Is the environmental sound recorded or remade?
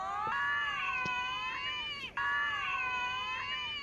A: recorded